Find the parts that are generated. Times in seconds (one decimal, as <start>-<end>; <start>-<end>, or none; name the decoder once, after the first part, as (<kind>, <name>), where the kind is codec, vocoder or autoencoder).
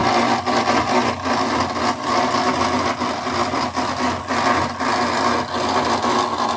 none